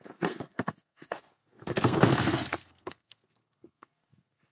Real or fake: fake